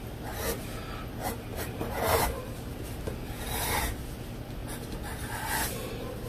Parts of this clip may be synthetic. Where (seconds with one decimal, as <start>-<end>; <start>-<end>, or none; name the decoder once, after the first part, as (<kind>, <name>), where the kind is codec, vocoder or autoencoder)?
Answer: 1.5-4.0 (vocoder, BigVGAN v2)